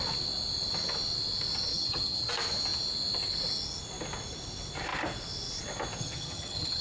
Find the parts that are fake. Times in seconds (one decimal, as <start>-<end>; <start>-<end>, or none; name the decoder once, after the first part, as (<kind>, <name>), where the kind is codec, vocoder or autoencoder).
1.7-2.3 (vocoder, HiFi-GAN); 6.0-6.8